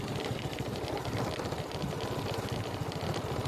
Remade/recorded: recorded